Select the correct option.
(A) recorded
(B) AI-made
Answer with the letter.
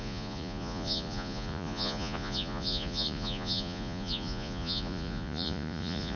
B